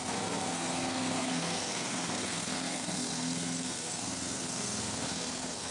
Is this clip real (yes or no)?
no